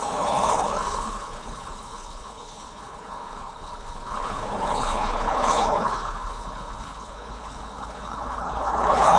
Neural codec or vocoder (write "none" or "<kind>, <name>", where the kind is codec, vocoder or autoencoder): codec, HILCodec